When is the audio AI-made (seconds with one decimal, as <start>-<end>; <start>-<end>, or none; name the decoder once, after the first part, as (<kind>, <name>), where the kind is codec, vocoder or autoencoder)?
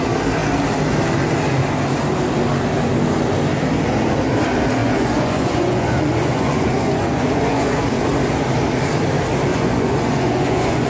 4.8-7.8 (vocoder, Vocos); 9.5-10.9